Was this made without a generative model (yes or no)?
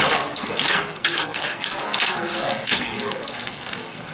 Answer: no